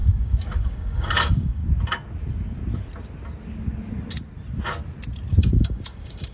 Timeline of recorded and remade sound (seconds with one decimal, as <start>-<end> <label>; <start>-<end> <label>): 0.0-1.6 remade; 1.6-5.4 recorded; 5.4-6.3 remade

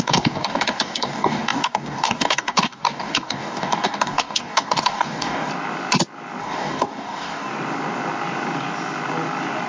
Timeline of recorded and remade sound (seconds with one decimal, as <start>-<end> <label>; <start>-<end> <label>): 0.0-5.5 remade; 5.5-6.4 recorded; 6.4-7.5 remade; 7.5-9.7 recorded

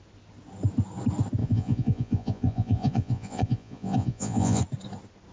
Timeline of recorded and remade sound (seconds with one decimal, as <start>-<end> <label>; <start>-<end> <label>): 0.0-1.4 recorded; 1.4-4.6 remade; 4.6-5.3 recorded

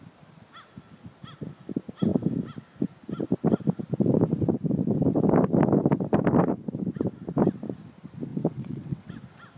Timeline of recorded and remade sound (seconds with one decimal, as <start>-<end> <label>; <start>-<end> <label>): 0.0-8.3 recorded; 8.3-9.2 remade; 9.2-9.6 recorded

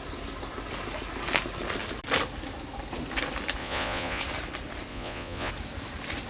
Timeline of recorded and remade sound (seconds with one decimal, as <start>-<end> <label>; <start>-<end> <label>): 0.0-3.6 recorded; 3.6-4.2 remade; 4.2-4.9 recorded; 4.9-5.5 remade; 5.5-6.3 recorded